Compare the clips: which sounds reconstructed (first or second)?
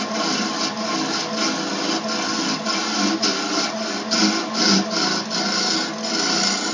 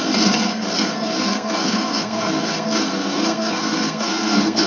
second